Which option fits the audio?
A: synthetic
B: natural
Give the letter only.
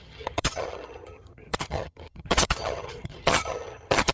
A